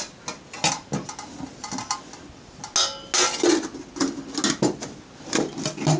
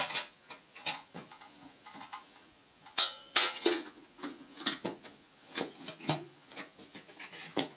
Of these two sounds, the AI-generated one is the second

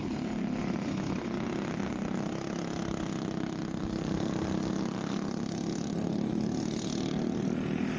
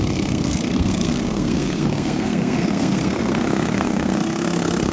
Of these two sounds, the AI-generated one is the second